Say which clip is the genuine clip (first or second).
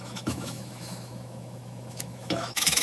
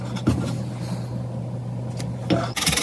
second